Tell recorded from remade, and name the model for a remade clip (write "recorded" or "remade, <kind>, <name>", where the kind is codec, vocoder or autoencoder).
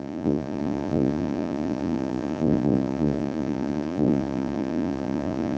remade, vocoder, Vocos